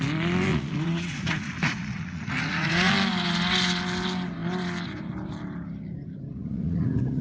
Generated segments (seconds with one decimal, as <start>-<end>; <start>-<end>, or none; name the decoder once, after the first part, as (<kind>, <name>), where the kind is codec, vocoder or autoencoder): 0.5-2.9 (vocoder, Vocos); 6.3-7.2